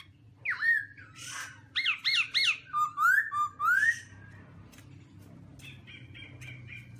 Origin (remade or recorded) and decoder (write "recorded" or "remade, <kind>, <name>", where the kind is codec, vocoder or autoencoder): recorded